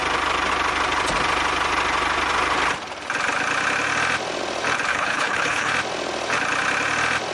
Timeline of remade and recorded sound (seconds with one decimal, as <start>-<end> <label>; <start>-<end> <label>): 0.0-4.9 recorded; 4.9-5.7 remade; 5.7-7.3 recorded